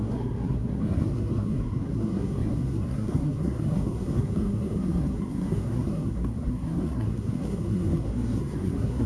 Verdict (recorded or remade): remade